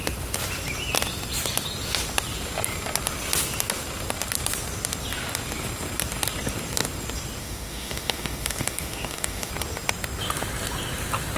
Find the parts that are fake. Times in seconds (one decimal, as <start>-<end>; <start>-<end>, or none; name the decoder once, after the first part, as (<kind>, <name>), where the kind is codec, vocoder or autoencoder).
7.4-9.5 (autoencoder, DAC-VAE)